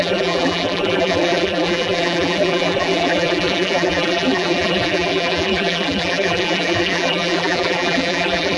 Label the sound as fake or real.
fake